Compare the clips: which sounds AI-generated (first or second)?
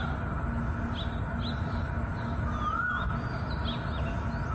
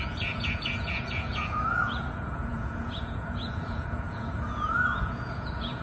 second